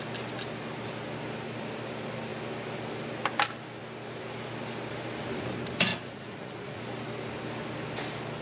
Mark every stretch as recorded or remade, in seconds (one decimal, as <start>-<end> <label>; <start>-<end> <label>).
0.0-5.9 recorded; 5.9-6.8 remade; 6.8-8.4 recorded

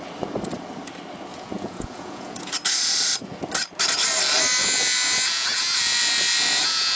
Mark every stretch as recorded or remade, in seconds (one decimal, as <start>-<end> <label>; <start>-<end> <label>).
0.0-1.3 recorded; 1.3-2.5 remade; 2.5-4.6 recorded; 4.6-7.0 remade

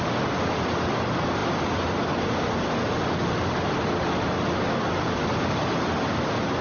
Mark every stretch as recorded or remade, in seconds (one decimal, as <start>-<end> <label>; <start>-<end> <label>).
0.0-6.6 recorded

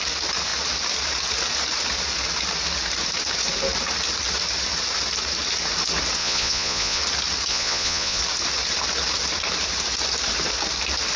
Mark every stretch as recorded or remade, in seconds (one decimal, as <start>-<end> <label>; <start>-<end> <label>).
0.0-6.2 recorded; 6.2-7.0 remade; 7.0-7.5 recorded; 7.5-8.2 remade; 8.2-11.2 recorded

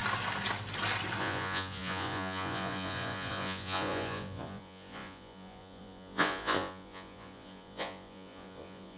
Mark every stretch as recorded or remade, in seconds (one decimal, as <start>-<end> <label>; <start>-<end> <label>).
0.0-1.2 recorded; 1.2-9.0 remade